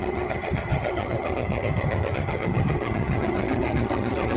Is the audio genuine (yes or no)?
no